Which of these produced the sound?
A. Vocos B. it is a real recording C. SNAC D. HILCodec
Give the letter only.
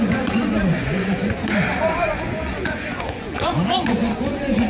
A